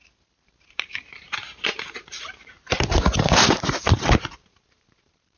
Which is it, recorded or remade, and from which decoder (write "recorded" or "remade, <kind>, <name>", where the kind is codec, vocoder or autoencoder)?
remade, vocoder, BigVGAN v2